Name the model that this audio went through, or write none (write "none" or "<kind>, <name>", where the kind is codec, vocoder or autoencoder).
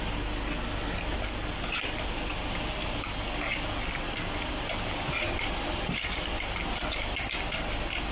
none